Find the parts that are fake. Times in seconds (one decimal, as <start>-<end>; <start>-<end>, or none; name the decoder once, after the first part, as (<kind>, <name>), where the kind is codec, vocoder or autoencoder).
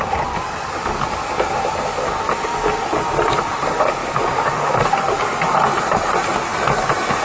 4.0-5.0 (codec, DAC)